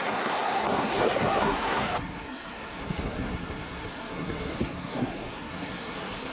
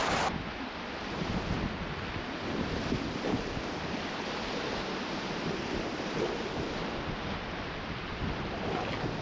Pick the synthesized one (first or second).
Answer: first